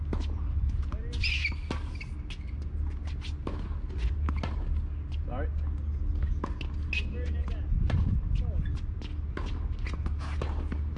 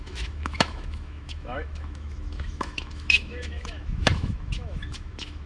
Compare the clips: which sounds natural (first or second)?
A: first